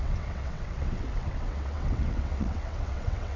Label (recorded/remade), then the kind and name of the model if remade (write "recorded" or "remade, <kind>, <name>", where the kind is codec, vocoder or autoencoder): remade, vocoder, WaveNeXt